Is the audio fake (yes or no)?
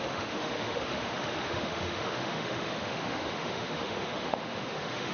yes